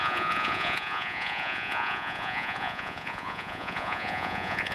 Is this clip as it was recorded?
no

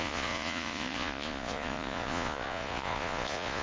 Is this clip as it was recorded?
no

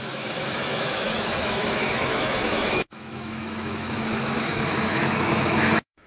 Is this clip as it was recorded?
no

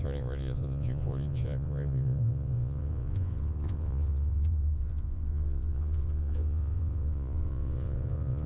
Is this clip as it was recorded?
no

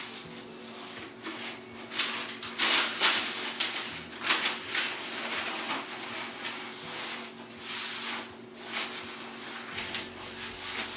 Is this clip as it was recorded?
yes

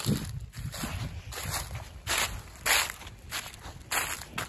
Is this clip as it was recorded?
yes